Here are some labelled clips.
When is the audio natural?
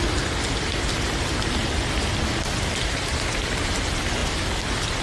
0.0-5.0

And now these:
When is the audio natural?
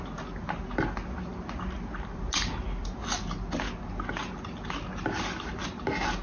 0.0-6.2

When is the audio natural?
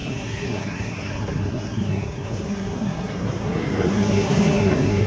none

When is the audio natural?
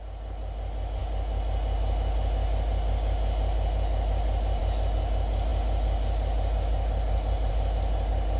0.0-8.4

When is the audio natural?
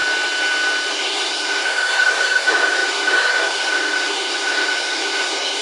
0.0-0.9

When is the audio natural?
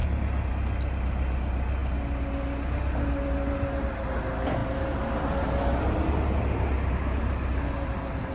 0.0-8.3